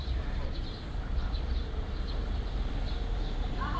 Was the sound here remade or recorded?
remade